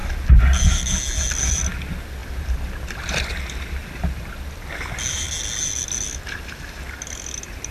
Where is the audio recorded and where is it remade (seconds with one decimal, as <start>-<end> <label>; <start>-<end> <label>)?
0.0-7.7 recorded